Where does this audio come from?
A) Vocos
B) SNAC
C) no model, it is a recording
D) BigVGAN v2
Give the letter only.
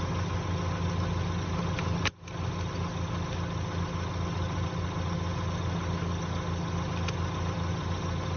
C